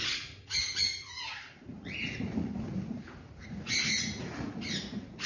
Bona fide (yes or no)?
no